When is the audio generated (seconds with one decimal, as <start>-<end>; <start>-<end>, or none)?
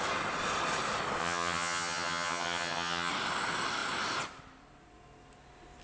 1.2-3.1